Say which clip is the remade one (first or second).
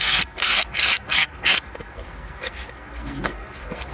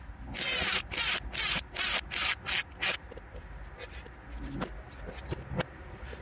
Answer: first